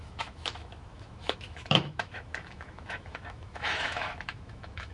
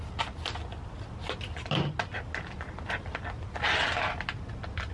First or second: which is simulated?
first